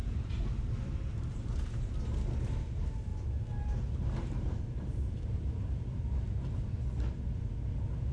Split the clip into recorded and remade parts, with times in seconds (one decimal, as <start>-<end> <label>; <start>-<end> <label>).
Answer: 0.0-1.9 remade; 1.9-3.1 recorded; 3.1-6.8 remade; 6.8-8.1 recorded

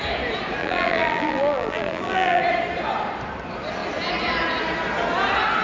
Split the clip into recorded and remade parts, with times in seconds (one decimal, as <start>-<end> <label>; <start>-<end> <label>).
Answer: 0.0-0.6 recorded; 0.6-2.4 remade; 2.4-5.6 recorded

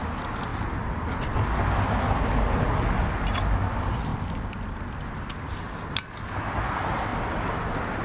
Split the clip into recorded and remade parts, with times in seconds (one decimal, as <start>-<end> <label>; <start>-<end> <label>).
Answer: 0.0-0.5 recorded; 0.5-3.0 remade; 3.0-7.1 recorded; 7.1-8.0 remade

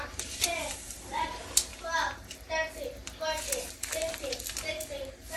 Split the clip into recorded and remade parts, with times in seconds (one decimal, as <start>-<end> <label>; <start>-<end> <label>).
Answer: 0.0-1.7 remade; 1.7-4.9 recorded; 4.9-5.4 remade

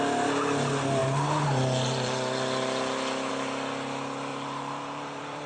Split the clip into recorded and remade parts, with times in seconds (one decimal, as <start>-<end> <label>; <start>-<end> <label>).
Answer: 0.0-4.3 recorded; 4.3-5.5 remade

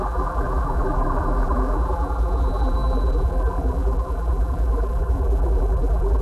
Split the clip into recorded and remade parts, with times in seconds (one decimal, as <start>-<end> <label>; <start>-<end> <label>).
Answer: 0.0-6.2 remade

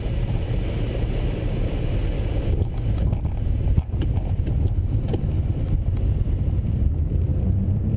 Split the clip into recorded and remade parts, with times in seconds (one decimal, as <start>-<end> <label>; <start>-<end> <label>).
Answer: 0.0-2.0 remade; 2.0-2.8 recorded; 2.8-8.0 remade

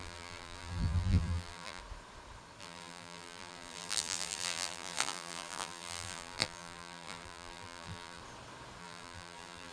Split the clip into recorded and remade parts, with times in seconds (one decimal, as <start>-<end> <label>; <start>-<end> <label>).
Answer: 0.0-1.8 remade; 1.8-2.6 recorded; 2.6-8.2 remade; 8.2-8.8 recorded; 8.8-9.7 remade